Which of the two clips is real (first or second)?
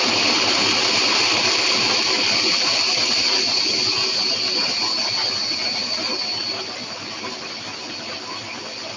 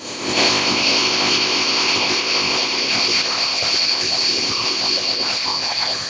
first